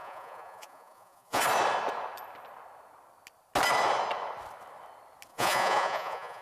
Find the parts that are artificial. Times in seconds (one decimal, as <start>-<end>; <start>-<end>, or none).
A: 0.0-1.4; 5.3-6.4